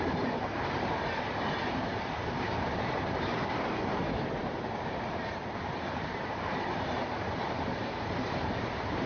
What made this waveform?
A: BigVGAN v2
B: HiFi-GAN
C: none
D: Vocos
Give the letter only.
A